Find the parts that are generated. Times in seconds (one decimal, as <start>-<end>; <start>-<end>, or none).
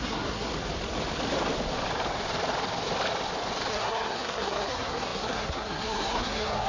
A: 0.0-0.5; 3.7-6.7